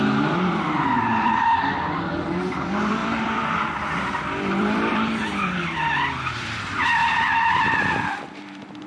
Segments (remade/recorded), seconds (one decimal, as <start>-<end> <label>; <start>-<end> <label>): 0.0-7.0 remade; 7.0-7.8 recorded; 7.8-8.9 remade